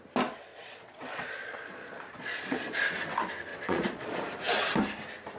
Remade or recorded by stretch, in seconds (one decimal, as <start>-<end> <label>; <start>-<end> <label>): 0.0-0.5 recorded; 0.5-2.8 remade; 2.8-3.5 recorded; 3.5-4.2 remade; 4.2-5.4 recorded